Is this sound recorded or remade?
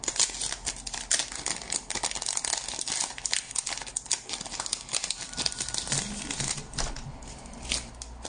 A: recorded